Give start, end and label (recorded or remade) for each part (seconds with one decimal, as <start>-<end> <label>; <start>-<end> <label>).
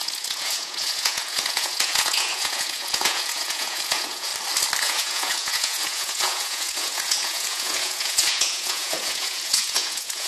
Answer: 0.0-4.3 remade; 4.3-4.8 recorded; 4.8-10.3 remade